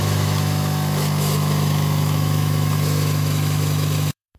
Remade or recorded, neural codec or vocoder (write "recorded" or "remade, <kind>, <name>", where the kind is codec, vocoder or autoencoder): remade, autoencoder, DAC-VAE